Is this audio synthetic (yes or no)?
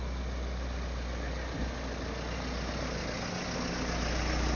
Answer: no